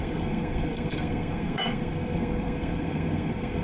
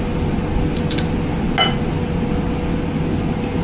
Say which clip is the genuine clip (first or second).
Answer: second